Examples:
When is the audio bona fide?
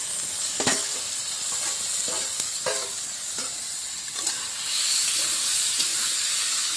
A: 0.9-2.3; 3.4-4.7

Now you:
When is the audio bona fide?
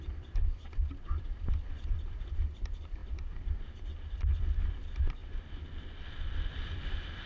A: 5.2-6.6